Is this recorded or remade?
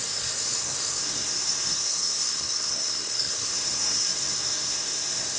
remade